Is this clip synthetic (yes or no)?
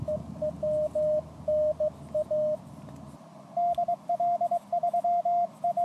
no